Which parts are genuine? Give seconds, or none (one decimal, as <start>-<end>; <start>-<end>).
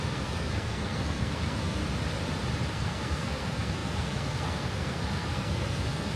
1.8-2.7